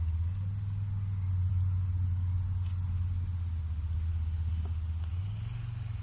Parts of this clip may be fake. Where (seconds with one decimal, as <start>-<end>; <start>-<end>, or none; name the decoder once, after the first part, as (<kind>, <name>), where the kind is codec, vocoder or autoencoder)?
none